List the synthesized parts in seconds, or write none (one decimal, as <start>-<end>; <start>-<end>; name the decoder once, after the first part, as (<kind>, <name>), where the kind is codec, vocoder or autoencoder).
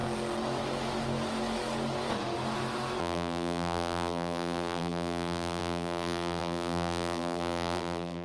3.0-8.2 (vocoder, BigVGAN v2)